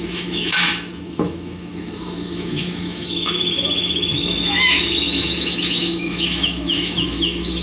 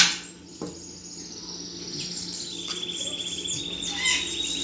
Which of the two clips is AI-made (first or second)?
first